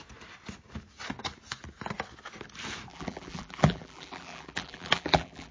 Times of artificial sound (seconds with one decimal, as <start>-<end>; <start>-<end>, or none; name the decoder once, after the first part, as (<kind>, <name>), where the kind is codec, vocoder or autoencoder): 2.9-5.5 (vocoder, BigVGAN v2)